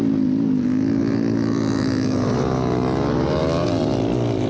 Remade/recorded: recorded